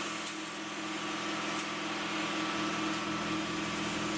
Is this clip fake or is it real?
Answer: real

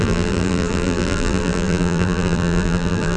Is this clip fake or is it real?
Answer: fake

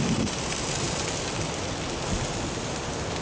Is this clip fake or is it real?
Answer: real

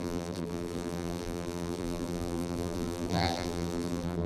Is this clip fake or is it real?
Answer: fake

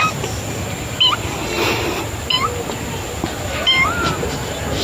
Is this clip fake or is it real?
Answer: real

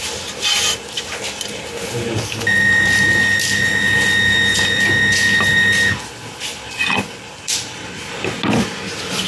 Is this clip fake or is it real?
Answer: real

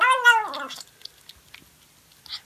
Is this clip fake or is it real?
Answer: real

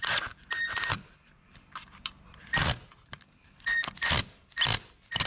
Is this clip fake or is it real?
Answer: fake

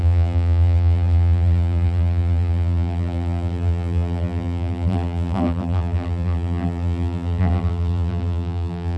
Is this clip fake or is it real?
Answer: fake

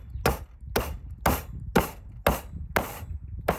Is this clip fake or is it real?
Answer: real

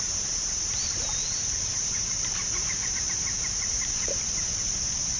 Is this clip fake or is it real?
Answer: fake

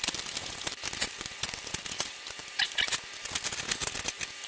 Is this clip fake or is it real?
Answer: real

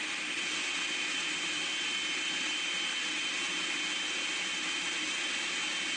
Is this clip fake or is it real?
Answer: real